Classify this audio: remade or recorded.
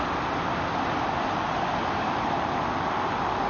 recorded